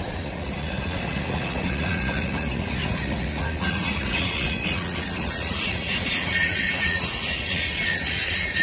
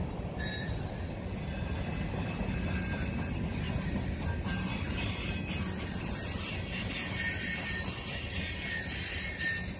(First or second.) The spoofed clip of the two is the first